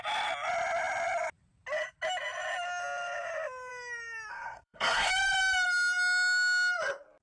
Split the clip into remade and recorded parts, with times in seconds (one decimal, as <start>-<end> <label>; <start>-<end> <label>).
0.0-4.3 recorded; 4.3-5.1 remade; 5.1-7.2 recorded